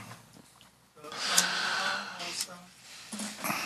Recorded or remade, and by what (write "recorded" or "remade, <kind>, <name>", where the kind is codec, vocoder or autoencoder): recorded